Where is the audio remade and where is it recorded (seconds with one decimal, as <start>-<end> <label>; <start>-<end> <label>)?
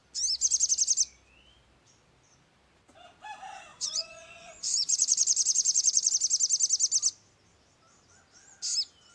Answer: 0.0-3.7 recorded; 3.7-6.1 remade; 6.1-9.1 recorded